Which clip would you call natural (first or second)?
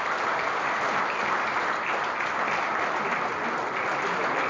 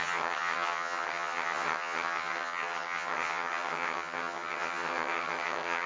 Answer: first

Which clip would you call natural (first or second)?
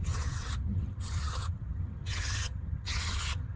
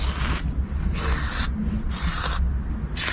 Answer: second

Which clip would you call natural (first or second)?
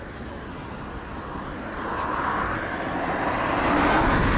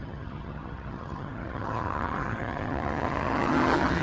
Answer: first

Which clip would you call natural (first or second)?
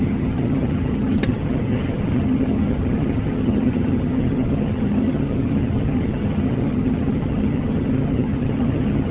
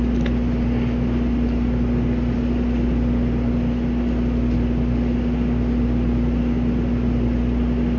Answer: second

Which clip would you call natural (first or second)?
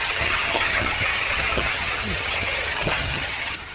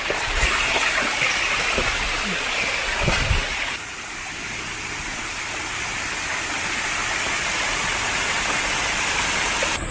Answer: second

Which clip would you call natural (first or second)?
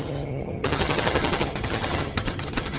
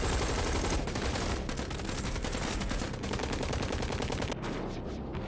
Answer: second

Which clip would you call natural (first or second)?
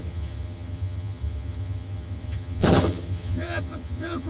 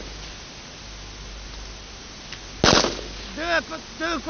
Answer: second